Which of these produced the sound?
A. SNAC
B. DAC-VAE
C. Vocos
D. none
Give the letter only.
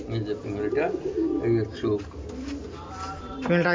D